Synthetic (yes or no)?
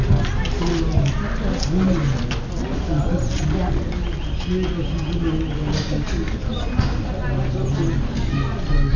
no